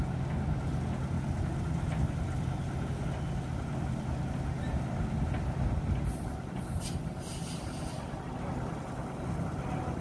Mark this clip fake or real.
real